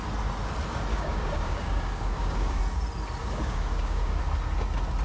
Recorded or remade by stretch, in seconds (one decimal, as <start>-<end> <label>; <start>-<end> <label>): 0.0-0.9 recorded; 0.9-2.6 remade; 2.6-3.2 recorded; 3.2-4.2 remade; 4.2-5.0 recorded